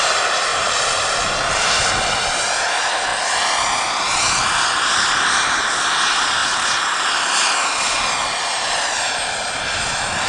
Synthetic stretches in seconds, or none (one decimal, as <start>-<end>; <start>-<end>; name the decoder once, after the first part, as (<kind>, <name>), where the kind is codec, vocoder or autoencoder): 0.5-1.9 (vocoder, BigVGAN v2)